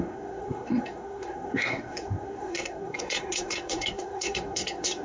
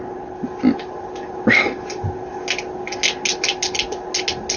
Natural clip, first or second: second